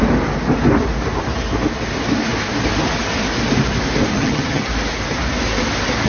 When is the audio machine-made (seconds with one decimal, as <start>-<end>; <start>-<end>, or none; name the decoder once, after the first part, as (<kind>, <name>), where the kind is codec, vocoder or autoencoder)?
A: 4.1-4.7 (vocoder, HiFi-GAN)